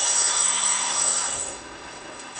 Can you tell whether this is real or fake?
fake